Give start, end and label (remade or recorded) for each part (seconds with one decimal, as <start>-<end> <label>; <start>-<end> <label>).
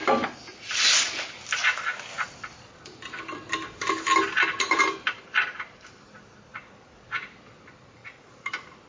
0.0-8.9 recorded